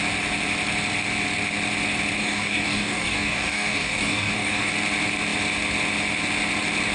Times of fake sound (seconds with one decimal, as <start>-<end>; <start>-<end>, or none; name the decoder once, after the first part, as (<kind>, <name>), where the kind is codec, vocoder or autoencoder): 2.2-4.7 (codec, DAC)